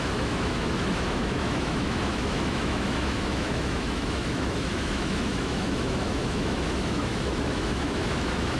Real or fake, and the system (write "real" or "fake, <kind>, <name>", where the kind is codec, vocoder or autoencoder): fake, autoencoder, DAC-VAE